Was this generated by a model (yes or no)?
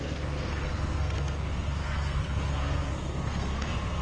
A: yes